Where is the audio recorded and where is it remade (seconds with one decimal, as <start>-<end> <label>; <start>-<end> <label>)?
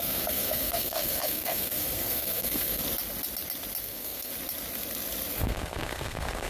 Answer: 0.0-2.8 remade; 2.8-3.8 recorded; 3.8-4.3 remade; 4.3-5.4 recorded; 5.4-6.5 remade